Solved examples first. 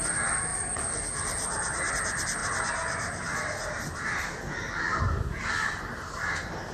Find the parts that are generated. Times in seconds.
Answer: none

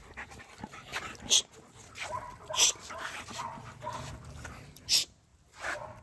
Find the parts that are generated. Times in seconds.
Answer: none

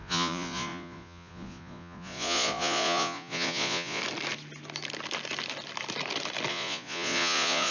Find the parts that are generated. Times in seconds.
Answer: 0.0-4.0 (vocoder, Vocos); 6.5-7.7

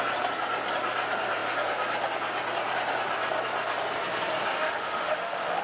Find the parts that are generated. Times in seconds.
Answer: 4.5-5.6 (autoencoder, DAC-VAE)

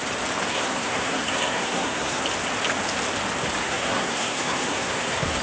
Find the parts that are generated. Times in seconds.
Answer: 0.5-2.2 (codec, SNAC); 3.6-5.4

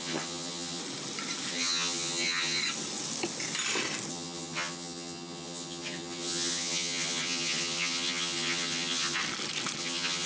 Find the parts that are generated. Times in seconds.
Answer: 0.0-0.8 (vocoder, HiFi-GAN); 1.5-2.6; 4.1-9.2; 9.8-10.3

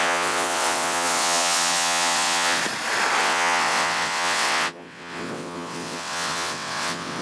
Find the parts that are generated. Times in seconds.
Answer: 0.0-2.6 (vocoder, WaveNeXt); 3.2-7.2

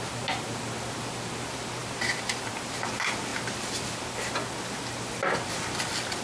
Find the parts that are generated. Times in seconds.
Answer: none